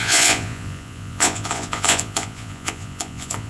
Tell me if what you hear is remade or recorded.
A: remade